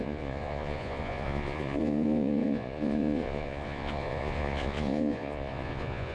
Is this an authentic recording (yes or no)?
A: no